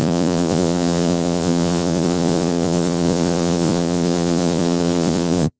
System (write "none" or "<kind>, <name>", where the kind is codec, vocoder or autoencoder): vocoder, Vocos